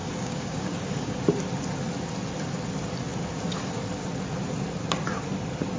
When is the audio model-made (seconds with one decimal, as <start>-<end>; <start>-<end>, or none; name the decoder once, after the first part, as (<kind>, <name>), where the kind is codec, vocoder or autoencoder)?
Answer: 0.0-1.2 (codec, DAC)